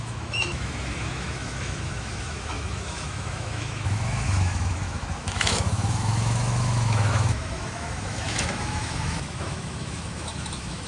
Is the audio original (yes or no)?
no